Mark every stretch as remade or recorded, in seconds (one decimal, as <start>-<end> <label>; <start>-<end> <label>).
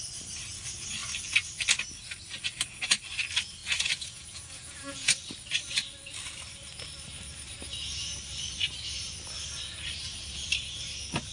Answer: 0.0-3.6 recorded; 3.6-5.2 remade; 5.2-11.3 recorded